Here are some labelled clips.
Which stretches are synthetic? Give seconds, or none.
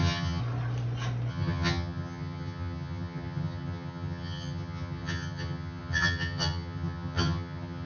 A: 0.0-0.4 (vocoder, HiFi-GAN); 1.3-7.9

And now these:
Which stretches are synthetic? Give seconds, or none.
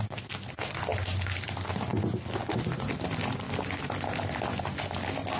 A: none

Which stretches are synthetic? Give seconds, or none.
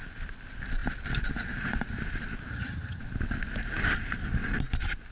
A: 2.5-3.0 (vocoder, HiFi-GAN)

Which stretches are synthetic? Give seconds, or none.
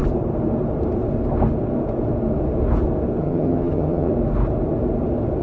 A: 3.2-4.1 (vocoder, HiFi-GAN)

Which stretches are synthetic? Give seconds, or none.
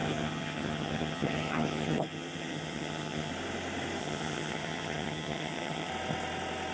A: 0.0-3.3 (vocoder, HiFi-GAN); 4.0-5.9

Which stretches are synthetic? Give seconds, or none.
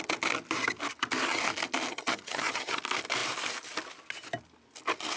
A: 1.9-2.8 (vocoder, HiFi-GAN)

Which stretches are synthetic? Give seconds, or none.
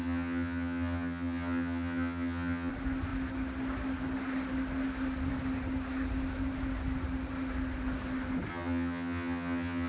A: 0.0-2.7 (vocoder, HiFi-GAN); 8.5-9.9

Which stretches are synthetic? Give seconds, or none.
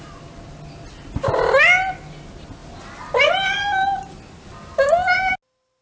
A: none